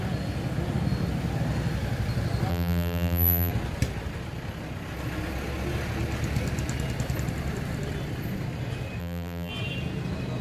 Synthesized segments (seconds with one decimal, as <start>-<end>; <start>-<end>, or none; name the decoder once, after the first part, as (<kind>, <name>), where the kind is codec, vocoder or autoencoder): 2.5-3.5 (vocoder, BigVGAN v2); 9.0-9.5